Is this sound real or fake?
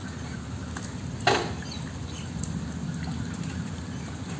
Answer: real